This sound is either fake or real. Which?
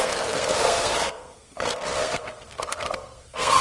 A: fake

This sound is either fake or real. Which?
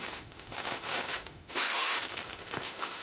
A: fake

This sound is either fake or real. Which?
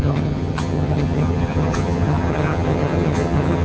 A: fake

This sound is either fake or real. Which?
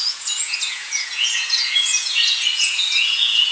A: fake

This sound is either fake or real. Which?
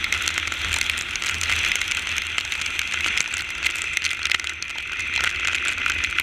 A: real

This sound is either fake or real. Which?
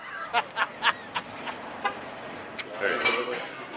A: real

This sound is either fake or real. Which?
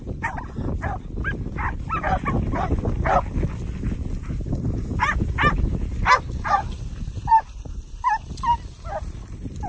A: real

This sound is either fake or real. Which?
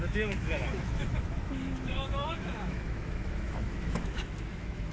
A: fake